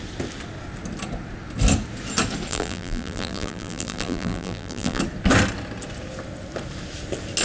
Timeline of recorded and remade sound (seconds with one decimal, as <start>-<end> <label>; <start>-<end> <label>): 0.0-2.5 recorded; 2.5-5.0 remade; 5.0-7.4 recorded

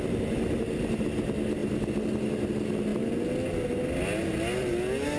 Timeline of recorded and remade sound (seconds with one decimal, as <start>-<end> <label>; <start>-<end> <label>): 0.0-5.2 recorded

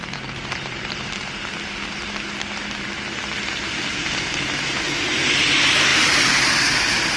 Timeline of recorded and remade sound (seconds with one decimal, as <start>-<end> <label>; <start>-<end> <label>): 0.0-1.5 remade; 1.5-3.9 recorded; 3.9-7.2 remade

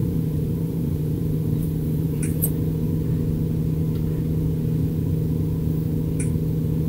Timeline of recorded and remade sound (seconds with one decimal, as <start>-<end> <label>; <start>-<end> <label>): 0.0-2.5 remade; 2.5-6.9 recorded

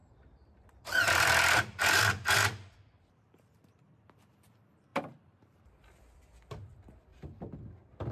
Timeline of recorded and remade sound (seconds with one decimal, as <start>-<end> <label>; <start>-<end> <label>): 0.0-3.8 remade; 3.8-4.9 recorded; 4.9-5.7 remade; 5.7-8.1 recorded